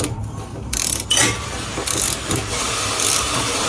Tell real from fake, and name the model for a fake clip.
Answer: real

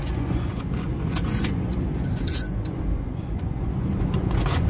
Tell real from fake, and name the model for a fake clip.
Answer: fake, vocoder, Vocos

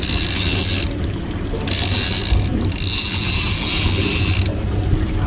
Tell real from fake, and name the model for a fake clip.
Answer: real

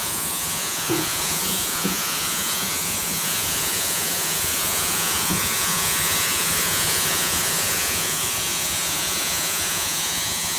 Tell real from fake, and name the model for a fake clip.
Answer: fake, vocoder, Vocos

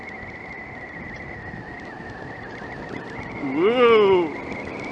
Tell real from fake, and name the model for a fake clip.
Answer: real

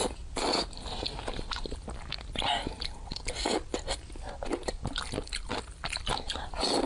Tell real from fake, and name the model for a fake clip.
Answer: real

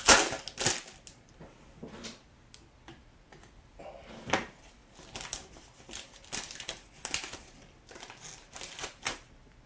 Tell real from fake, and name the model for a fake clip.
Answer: real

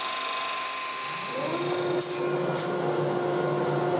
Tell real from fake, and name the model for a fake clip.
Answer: real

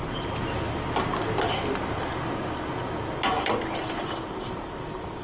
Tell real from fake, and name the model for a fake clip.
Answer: real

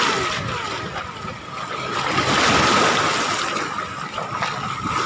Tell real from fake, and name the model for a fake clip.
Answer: real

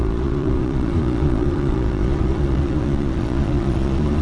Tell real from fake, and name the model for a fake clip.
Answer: fake, vocoder, Vocos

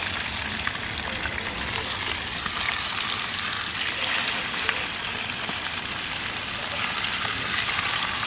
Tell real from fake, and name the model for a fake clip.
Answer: real